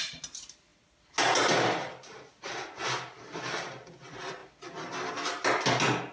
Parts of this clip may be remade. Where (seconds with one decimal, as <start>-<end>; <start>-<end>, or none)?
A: none